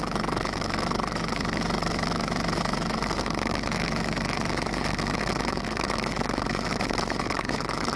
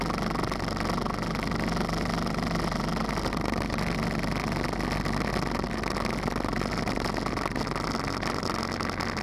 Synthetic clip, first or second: first